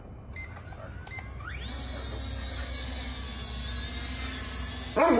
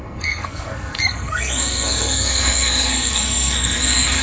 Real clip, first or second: first